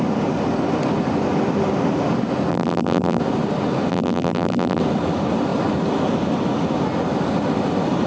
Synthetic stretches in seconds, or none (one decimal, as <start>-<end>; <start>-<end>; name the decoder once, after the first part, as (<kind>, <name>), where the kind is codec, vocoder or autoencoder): 2.5-3.2 (vocoder, BigVGAN v2); 3.9-4.8